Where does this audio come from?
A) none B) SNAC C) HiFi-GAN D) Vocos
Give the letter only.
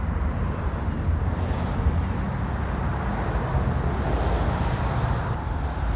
A